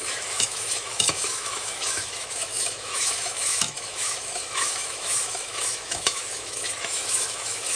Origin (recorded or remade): remade